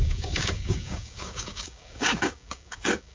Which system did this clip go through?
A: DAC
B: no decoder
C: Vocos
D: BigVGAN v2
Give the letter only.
A